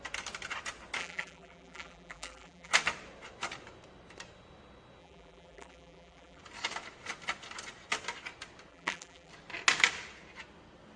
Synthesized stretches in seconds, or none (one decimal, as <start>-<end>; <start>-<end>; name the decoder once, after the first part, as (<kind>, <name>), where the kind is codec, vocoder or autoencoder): 1.0-2.7 (vocoder, BigVGAN v2); 5.0-6.4; 8.7-9.3